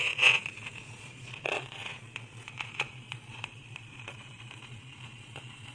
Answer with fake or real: fake